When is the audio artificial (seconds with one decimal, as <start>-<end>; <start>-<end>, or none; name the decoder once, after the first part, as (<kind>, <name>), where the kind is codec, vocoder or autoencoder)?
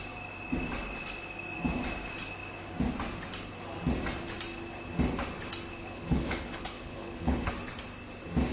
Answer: 5.7-7.5 (codec, HILCodec)